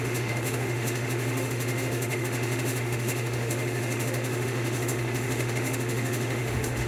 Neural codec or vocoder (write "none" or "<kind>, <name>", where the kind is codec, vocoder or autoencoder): autoencoder, DAC-VAE